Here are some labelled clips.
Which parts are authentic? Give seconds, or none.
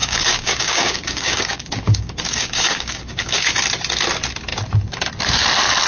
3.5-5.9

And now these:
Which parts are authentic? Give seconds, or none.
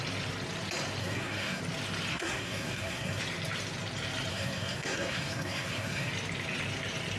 0.0-1.0; 1.6-2.1; 3.2-4.3; 6.1-7.2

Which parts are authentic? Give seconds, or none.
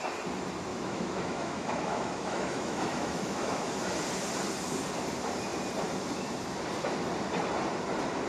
0.0-0.7; 3.7-8.3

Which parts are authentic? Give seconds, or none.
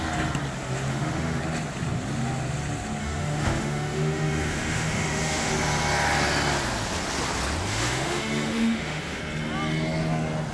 0.0-0.9; 1.4-3.0; 5.5-7.7; 9.2-10.5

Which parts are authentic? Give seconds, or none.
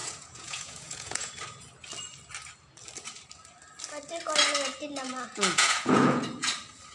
1.3-5.3; 6.5-6.9